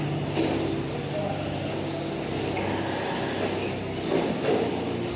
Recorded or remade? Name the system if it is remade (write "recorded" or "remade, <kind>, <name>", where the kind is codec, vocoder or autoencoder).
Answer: recorded